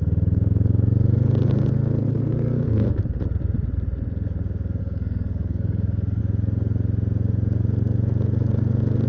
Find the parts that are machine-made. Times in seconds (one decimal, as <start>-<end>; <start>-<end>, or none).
2.0-3.0; 4.8-6.2